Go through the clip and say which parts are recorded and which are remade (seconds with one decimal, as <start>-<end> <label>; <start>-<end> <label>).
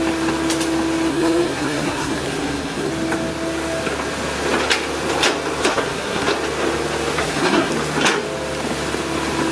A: 0.0-1.1 recorded; 1.1-2.9 remade; 2.9-5.7 recorded; 5.7-6.3 remade; 6.3-7.2 recorded; 7.2-7.7 remade; 7.7-9.5 recorded